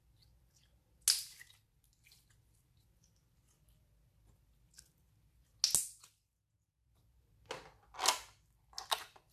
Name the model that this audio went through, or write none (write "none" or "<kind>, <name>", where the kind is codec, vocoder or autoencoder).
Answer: none